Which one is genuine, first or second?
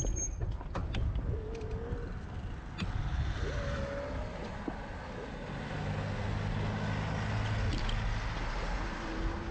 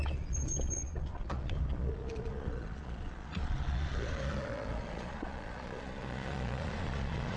first